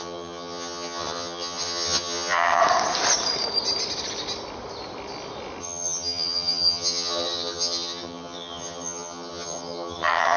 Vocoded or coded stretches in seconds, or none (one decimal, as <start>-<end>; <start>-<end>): 0.0-2.6; 5.6-10.4